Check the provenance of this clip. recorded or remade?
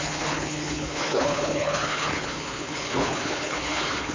remade